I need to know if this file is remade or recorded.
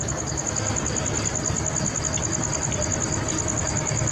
recorded